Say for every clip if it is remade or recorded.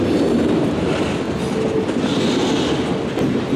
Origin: recorded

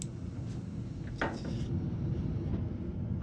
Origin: recorded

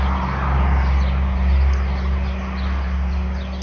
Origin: recorded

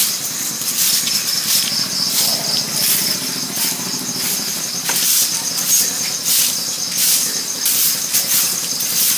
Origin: remade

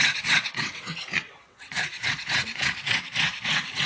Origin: remade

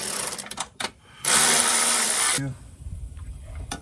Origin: remade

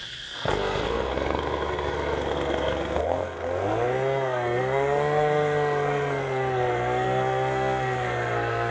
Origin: remade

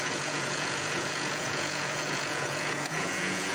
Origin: remade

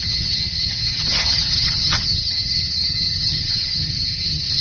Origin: remade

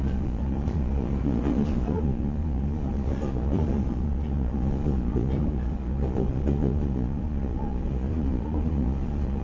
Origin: remade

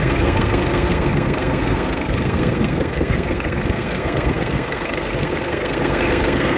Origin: remade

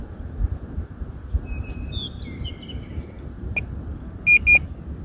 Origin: recorded